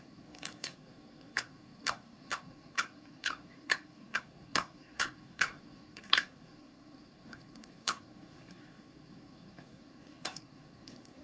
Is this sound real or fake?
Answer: fake